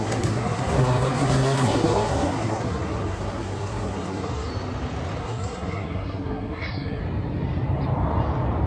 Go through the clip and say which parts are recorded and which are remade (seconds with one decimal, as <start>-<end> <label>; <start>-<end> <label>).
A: 0.0-4.5 remade; 4.5-5.2 recorded; 5.2-7.0 remade; 7.0-8.7 recorded